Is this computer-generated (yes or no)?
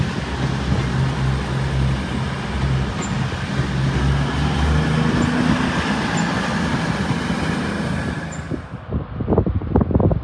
no